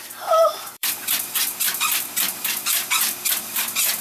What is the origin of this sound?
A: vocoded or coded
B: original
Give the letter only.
A